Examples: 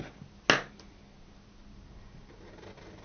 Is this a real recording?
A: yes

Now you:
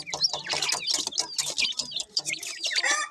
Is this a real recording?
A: yes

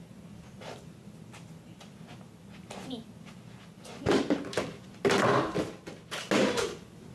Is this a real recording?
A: yes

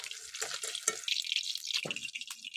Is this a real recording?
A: yes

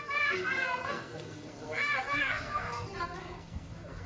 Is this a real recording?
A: no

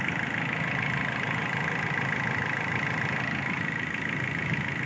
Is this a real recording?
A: yes